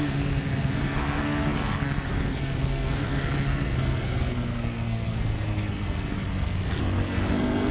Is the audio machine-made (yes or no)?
yes